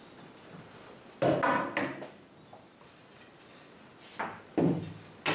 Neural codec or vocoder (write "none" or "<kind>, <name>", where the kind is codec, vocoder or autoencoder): none